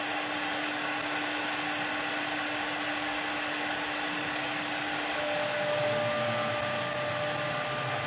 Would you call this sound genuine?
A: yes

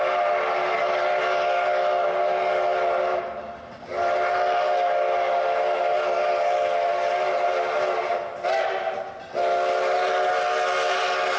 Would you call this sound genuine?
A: yes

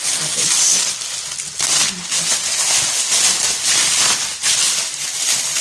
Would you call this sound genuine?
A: yes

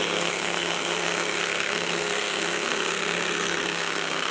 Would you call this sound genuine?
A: no